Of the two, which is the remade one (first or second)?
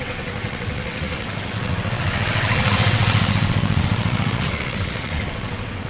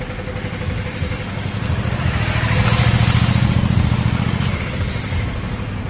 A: first